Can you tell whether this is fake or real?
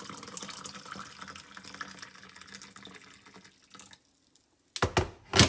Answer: real